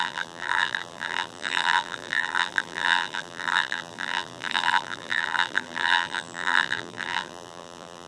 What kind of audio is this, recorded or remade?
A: remade